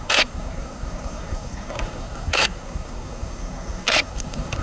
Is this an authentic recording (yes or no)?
no